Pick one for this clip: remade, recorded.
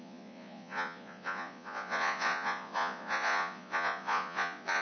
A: remade